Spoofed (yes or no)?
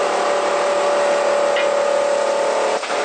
no